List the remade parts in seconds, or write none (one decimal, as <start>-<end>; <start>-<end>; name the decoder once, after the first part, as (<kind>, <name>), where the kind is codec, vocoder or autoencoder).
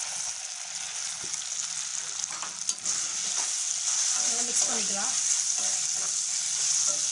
none